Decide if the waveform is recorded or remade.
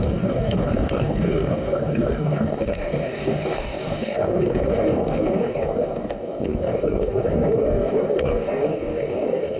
remade